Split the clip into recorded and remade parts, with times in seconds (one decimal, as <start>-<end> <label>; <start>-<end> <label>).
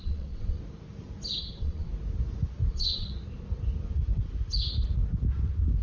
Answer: 0.0-0.6 remade; 0.6-1.4 recorded; 1.4-1.9 remade; 1.9-2.7 recorded; 2.7-3.1 remade; 3.1-5.8 recorded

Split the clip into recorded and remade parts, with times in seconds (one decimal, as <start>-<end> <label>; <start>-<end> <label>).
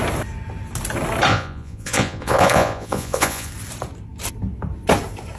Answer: 0.0-1.3 recorded; 1.3-3.5 remade; 3.5-5.4 recorded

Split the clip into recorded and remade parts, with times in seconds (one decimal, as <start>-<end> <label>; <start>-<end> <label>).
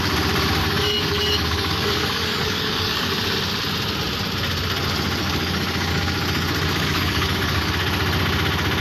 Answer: 0.0-0.6 recorded; 0.6-3.1 remade; 3.1-5.2 recorded; 5.2-7.7 remade; 7.7-8.8 recorded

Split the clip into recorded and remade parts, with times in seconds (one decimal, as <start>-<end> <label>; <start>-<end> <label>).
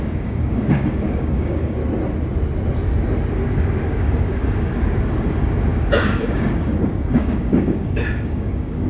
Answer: 0.0-1.8 remade; 1.8-3.3 recorded; 3.3-8.9 remade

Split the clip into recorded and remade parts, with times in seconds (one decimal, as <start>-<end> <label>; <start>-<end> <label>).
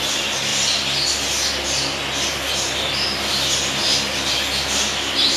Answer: 0.0-5.4 recorded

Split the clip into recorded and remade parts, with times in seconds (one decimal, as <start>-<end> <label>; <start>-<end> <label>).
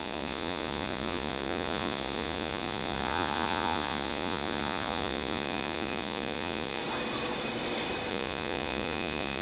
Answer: 0.0-6.8 remade; 6.8-8.1 recorded; 8.1-9.4 remade